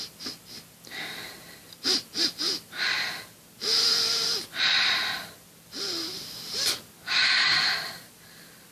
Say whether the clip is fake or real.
real